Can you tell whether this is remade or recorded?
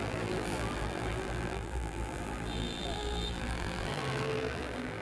remade